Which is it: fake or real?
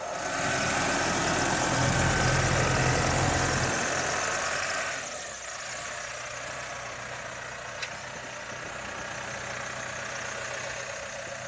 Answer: real